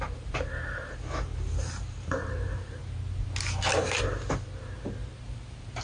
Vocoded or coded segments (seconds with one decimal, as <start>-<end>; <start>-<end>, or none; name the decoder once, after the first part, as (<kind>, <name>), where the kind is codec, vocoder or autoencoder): 0.0-2.8 (vocoder, BigVGAN v2); 5.2-5.8